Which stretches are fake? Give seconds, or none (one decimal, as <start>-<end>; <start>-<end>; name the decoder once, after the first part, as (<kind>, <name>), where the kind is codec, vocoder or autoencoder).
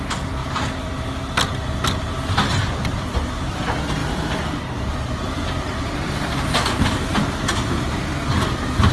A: none